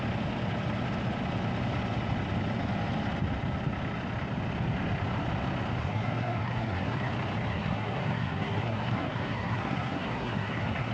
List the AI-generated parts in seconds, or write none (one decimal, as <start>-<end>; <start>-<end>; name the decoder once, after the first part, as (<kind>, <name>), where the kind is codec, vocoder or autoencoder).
5.8-7.1 (codec, SNAC); 7.5-10.9